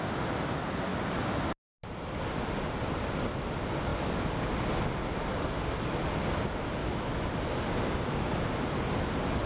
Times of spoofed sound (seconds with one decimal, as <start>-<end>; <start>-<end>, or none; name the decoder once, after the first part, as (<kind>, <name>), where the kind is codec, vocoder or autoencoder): 6.8-7.3 (autoencoder, DAC-VAE)